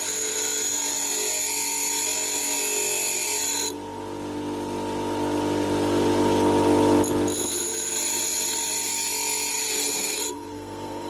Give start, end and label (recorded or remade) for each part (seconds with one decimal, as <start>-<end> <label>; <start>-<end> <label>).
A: 0.0-9.5 recorded; 9.5-11.1 remade